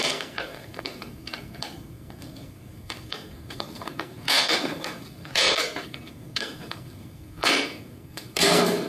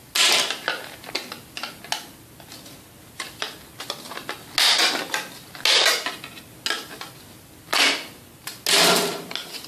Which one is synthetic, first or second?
first